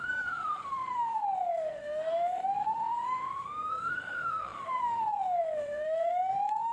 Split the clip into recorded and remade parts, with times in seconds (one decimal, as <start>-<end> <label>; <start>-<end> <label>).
0.0-6.7 remade